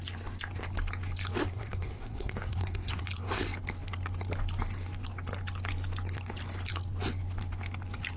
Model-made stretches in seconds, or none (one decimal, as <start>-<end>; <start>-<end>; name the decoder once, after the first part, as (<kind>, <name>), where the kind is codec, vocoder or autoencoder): 1.4-3.0 (codec, SNAC)